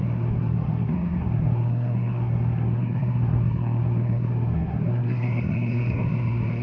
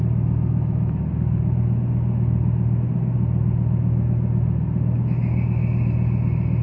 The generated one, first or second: first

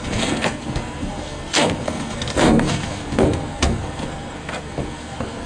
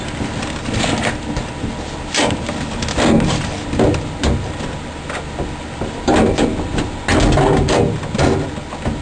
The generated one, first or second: first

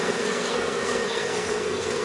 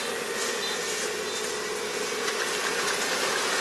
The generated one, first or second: first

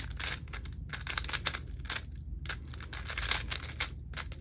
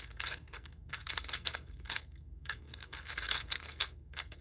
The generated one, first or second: second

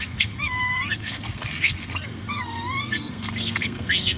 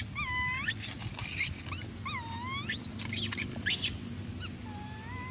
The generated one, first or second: first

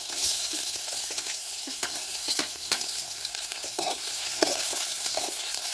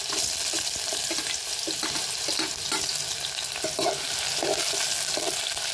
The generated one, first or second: first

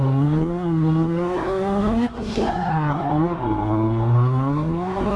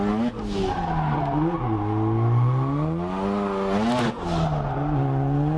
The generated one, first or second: first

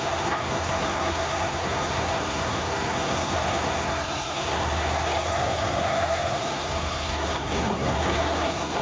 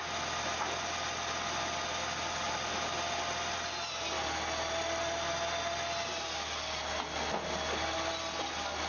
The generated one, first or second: first